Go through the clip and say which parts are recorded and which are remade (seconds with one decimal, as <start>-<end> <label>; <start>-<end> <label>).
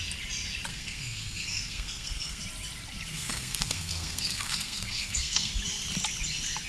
0.0-0.7 recorded; 0.7-2.4 remade; 2.4-3.1 recorded; 3.1-5.5 remade; 5.5-6.7 recorded